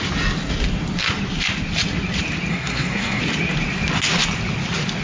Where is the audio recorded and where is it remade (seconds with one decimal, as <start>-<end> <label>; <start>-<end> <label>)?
0.0-2.5 recorded; 2.5-3.2 remade; 3.2-5.0 recorded